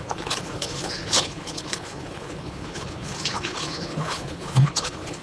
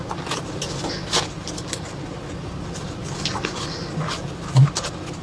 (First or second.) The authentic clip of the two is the second